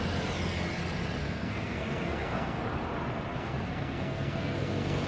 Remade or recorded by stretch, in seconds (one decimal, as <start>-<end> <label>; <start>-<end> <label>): 0.0-1.2 recorded; 1.2-2.6 remade; 2.6-3.3 recorded; 3.3-5.1 remade